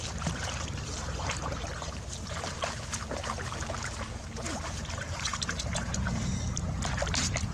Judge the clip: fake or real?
fake